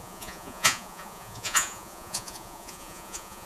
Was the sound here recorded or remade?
remade